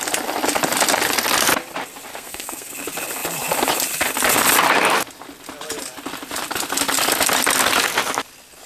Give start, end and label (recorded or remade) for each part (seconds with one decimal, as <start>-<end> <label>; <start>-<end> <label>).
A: 0.0-2.1 recorded; 2.1-2.7 remade; 2.7-8.7 recorded